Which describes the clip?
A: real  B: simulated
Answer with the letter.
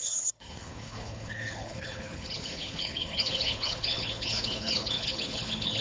B